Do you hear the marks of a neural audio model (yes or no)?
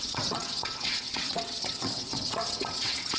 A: yes